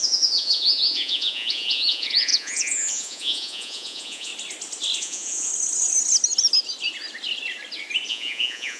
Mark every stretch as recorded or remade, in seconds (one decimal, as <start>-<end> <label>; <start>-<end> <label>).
0.0-4.3 remade; 4.3-5.0 recorded; 5.0-5.5 remade; 5.5-8.1 recorded; 8.1-8.8 remade